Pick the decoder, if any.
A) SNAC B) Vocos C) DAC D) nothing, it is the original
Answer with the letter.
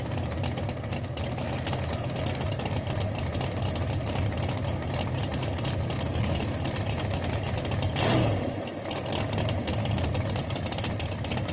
D